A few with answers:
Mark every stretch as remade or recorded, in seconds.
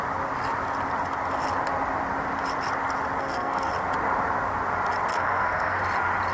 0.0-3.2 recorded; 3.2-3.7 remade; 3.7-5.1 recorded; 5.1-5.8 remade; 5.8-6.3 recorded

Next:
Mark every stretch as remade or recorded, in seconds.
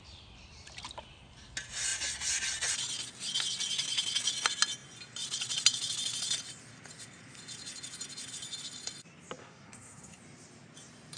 0.0-9.4 recorded; 9.4-10.2 remade; 10.2-11.2 recorded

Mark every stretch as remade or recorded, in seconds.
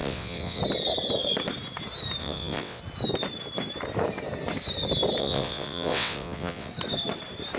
0.0-0.6 remade; 0.6-2.2 recorded; 2.2-2.8 remade; 2.8-5.2 recorded; 5.2-6.7 remade; 6.7-7.6 recorded